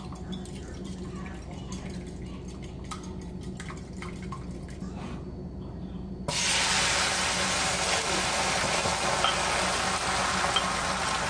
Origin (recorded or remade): recorded